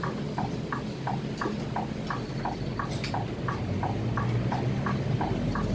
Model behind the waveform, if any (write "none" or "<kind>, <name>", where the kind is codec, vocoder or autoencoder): none